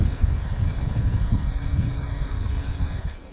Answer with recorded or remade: remade